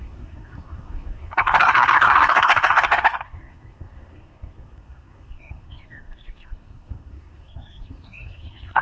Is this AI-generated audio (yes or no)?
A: yes